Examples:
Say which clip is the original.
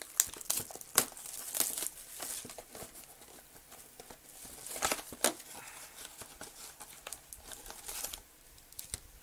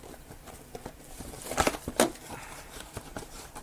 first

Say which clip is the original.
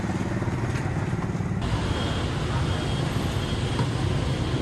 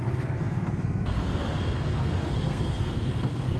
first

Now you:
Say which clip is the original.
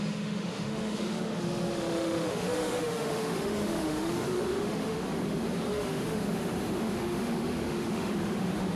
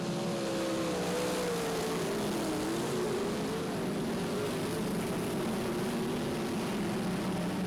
second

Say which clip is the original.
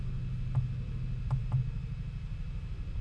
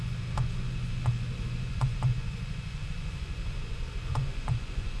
first